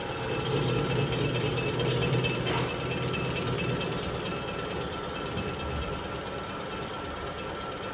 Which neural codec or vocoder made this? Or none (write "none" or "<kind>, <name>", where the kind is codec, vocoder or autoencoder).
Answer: vocoder, BigVGAN v2